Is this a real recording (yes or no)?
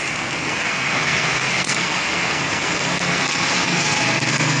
no